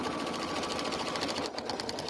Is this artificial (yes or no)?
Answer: no